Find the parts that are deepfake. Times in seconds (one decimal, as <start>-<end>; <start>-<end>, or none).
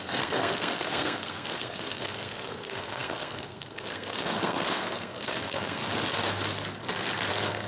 0.0-5.8; 7.3-7.7